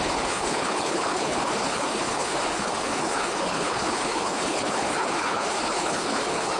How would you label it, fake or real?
fake